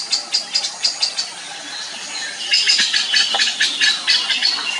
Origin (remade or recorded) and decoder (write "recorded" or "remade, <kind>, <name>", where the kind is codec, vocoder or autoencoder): recorded